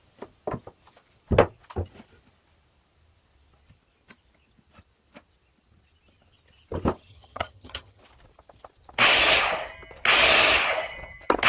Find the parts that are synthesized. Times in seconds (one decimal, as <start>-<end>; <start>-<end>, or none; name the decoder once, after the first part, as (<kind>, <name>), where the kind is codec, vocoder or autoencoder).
7.1-8.0 (vocoder, HiFi-GAN)